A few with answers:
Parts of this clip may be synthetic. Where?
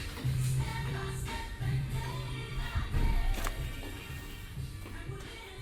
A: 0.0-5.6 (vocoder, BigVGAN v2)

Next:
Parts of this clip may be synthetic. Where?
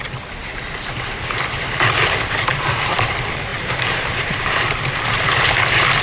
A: 2.5-3.1 (vocoder, BigVGAN v2); 3.5-4.6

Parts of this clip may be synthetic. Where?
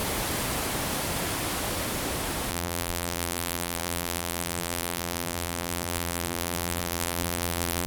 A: 2.5-7.9 (vocoder, BigVGAN v2)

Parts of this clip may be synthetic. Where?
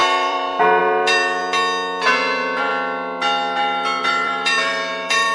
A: 0.0-1.4 (vocoder, BigVGAN v2); 2.1-2.7; 4.0-5.3